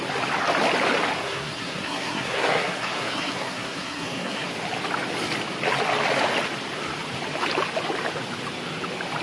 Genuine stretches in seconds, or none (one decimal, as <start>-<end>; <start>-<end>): 0.0-1.2; 4.5-9.2